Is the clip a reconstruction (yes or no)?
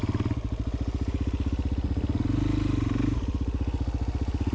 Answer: no